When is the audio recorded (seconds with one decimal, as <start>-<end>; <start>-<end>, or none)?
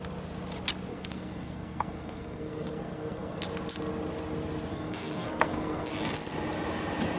0.0-0.9; 3.4-4.7; 5.9-7.2